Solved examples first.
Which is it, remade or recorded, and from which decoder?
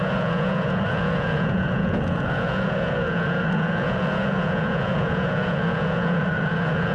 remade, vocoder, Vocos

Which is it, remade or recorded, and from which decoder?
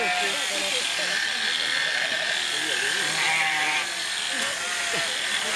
recorded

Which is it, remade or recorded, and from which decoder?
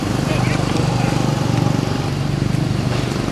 recorded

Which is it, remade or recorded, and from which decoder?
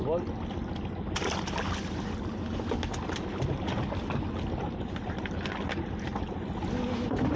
recorded